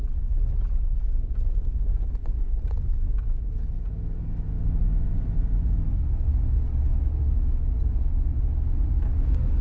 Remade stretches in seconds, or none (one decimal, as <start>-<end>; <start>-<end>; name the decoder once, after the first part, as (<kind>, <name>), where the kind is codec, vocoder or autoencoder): none

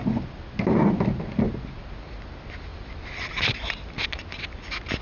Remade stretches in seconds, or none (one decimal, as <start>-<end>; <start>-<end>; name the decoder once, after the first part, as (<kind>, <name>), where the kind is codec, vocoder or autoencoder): none

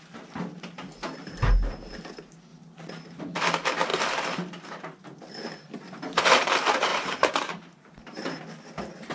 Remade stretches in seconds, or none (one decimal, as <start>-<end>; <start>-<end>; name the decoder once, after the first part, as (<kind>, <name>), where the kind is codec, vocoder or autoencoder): 2.5-3.2 (vocoder, BigVGAN v2); 6.9-8.4